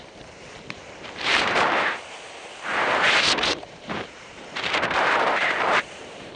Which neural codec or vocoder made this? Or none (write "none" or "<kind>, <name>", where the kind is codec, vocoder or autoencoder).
vocoder, BigVGAN v2